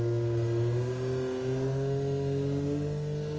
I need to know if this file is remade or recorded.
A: recorded